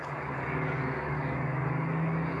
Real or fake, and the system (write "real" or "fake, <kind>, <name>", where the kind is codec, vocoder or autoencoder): fake, codec, DAC